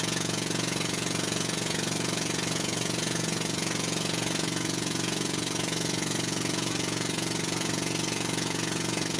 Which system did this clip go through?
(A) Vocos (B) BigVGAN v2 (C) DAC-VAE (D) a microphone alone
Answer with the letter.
A